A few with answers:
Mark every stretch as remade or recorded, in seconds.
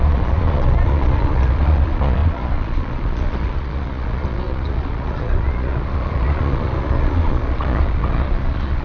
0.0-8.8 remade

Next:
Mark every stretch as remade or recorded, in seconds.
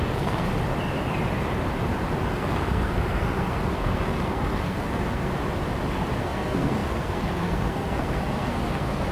0.0-0.5 remade; 0.5-2.3 recorded; 2.3-5.3 remade; 5.3-6.2 recorded; 6.2-9.1 remade